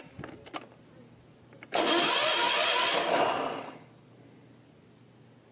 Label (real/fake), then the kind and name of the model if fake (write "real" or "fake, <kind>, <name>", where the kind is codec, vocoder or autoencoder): real